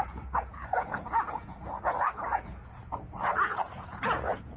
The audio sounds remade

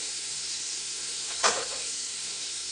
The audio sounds remade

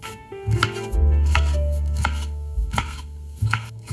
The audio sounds remade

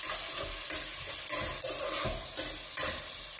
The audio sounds recorded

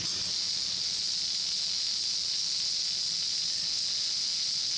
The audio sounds recorded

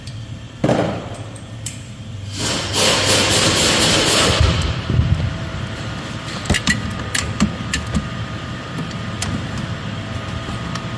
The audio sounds remade